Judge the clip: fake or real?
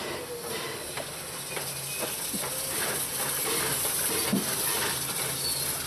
real